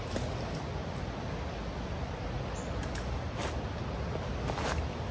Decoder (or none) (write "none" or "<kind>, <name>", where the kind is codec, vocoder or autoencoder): none